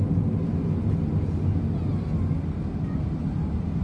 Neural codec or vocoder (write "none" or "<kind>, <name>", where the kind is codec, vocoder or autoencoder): none